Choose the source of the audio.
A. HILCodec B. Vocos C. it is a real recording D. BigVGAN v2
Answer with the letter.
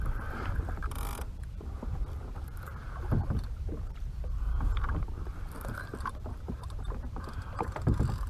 D